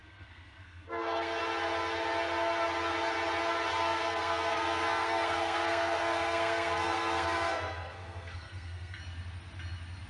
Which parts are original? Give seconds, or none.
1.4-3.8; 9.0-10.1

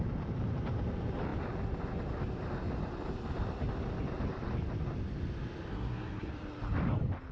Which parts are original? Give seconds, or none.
0.0-5.7; 6.3-7.3

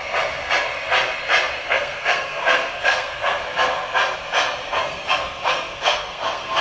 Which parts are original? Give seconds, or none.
0.0-1.6; 3.4-4.8

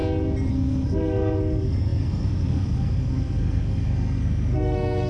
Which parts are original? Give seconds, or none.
0.0-0.5

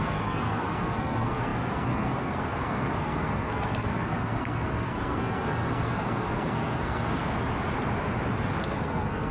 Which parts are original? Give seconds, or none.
7.2-8.6